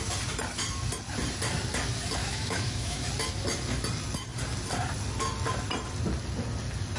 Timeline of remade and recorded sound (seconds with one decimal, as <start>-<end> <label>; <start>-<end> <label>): 0.0-2.2 recorded; 2.2-3.1 remade; 3.1-7.0 recorded